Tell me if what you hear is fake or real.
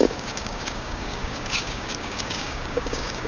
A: fake